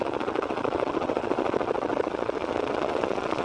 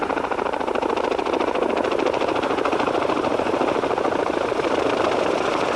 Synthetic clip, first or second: first